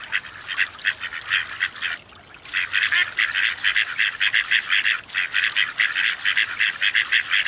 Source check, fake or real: real